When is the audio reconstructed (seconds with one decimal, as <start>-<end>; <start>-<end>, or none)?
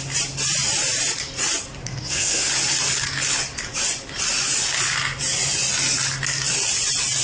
1.8-2.5